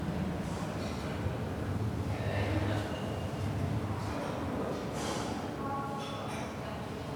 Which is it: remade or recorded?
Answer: recorded